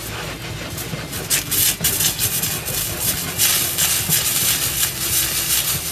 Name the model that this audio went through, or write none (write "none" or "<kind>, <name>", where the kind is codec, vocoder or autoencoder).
none